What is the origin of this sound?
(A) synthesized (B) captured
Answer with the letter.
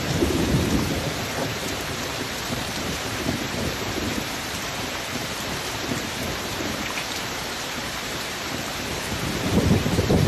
A